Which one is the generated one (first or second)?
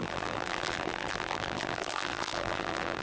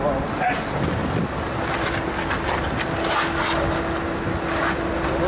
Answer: first